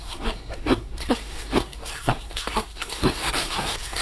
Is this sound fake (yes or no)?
yes